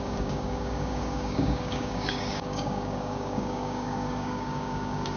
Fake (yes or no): yes